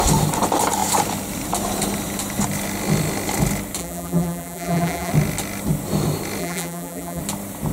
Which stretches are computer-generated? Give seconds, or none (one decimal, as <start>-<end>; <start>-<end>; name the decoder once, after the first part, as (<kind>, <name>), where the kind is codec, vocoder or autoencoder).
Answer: 3.8-5.1 (vocoder, BigVGAN v2); 6.4-7.2